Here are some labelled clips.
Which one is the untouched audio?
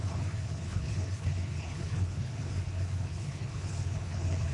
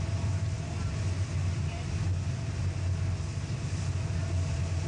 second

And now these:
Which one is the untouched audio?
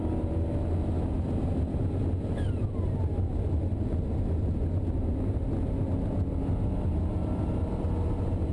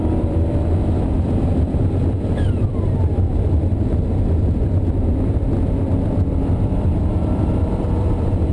first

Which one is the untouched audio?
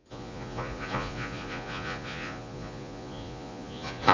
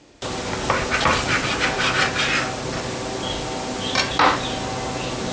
second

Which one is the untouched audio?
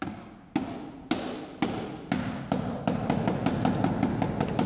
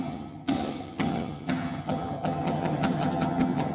first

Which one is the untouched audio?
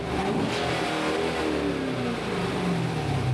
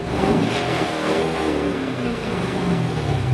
first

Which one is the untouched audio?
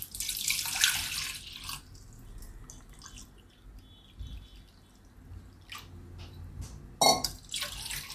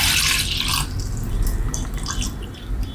first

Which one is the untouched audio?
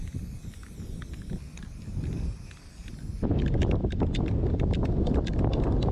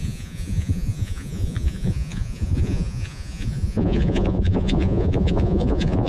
first